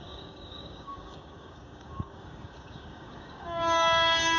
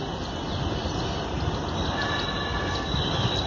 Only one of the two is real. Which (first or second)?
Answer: second